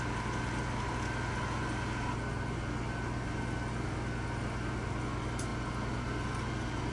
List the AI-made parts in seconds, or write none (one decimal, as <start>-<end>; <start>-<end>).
none